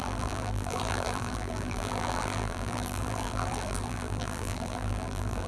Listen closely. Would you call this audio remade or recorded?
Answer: remade